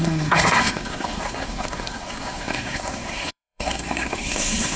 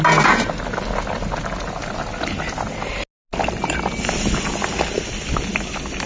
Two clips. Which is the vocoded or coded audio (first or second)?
first